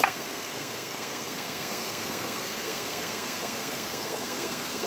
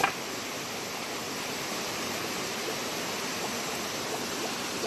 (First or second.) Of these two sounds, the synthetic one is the first